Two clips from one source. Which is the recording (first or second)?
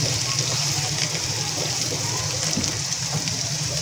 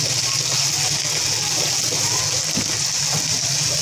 second